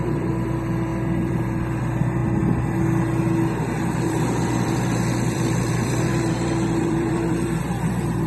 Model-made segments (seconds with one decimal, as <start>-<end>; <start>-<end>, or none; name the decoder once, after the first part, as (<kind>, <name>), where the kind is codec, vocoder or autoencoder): 0.0-2.2 (vocoder, BigVGAN v2); 3.6-8.3